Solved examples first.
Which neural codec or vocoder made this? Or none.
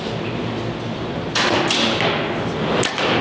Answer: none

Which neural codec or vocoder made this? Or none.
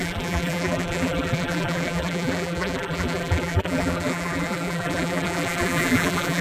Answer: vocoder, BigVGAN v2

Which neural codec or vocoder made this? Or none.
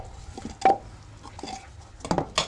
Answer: none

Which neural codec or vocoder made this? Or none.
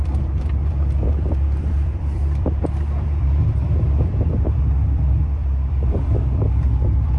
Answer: vocoder, BigVGAN v2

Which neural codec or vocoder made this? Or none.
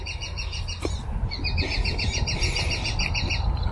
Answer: none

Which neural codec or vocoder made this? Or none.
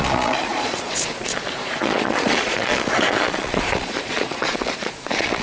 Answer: vocoder, Vocos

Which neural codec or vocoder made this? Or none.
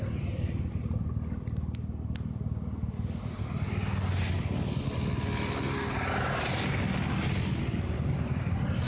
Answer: none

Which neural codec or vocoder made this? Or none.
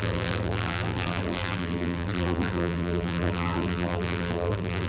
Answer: vocoder, BigVGAN v2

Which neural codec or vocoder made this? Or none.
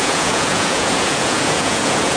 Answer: vocoder, Vocos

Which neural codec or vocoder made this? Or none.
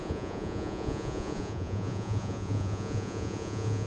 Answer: vocoder, Vocos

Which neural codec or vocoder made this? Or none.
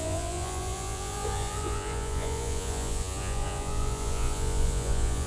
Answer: vocoder, Vocos